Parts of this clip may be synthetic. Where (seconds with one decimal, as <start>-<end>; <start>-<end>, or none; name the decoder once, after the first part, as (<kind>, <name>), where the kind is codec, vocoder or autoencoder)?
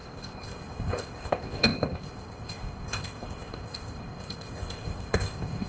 0.0-5.7 (codec, ZipCodec)